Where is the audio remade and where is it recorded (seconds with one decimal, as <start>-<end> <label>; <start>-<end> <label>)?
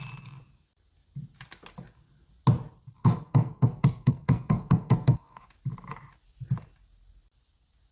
0.0-3.0 recorded; 3.0-5.4 remade; 5.4-7.9 recorded